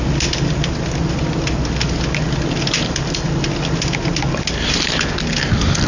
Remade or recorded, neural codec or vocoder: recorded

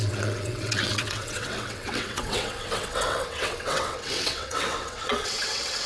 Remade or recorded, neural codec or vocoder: remade, vocoder, WaveNeXt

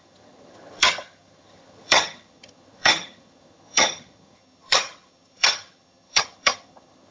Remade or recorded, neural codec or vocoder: remade, vocoder, HiFi-GAN